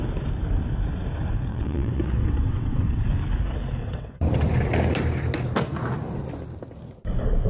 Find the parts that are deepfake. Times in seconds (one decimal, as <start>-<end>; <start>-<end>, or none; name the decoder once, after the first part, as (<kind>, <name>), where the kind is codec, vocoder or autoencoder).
1.5-3.0 (vocoder, WaveNeXt); 3.8-4.3